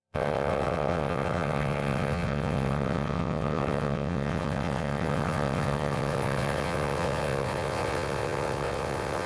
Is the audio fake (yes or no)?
yes